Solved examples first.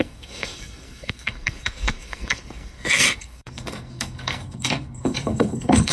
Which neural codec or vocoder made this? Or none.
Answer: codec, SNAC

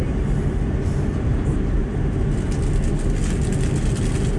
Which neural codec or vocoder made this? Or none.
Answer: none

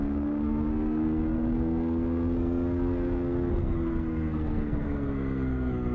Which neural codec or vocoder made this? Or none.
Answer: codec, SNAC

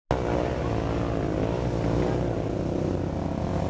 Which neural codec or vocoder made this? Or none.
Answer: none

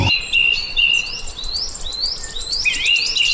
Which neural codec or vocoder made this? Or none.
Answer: none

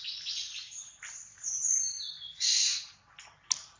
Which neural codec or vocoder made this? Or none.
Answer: none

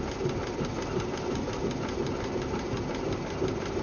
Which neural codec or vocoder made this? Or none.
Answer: none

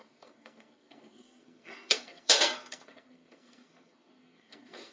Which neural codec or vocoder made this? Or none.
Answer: codec, SNAC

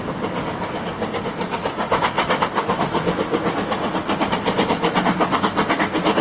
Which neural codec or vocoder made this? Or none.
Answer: none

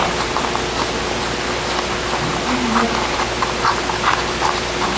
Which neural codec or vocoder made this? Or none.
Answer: none